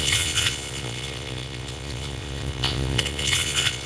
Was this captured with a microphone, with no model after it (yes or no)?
no